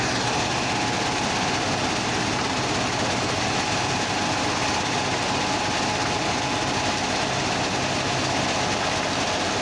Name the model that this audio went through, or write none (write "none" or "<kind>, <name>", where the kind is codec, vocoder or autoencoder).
none